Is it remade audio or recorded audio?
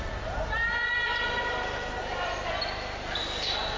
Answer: recorded